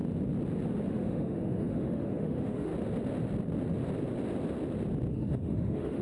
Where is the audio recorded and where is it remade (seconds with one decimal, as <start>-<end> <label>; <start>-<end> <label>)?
0.0-0.9 recorded; 0.9-2.7 remade; 2.7-5.1 recorded; 5.1-6.0 remade